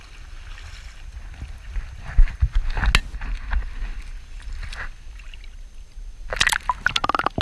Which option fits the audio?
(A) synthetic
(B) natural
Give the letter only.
B